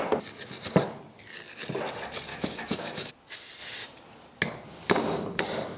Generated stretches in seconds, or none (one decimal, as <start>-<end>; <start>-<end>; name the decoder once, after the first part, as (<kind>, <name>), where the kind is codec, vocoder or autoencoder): 2.3-3.1 (autoencoder, DAC-VAE)